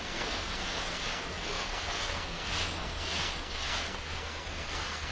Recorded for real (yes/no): no